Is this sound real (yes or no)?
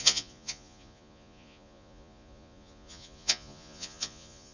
no